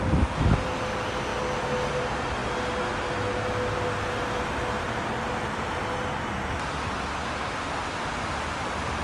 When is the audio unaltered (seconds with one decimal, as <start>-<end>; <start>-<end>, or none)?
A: 0.0-9.0